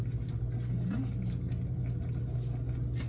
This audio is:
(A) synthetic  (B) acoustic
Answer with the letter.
B